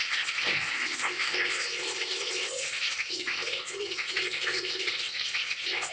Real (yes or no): no